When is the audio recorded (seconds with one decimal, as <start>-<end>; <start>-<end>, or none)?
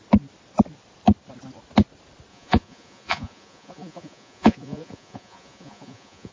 0.0-2.3